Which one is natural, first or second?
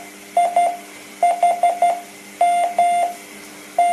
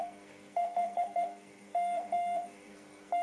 first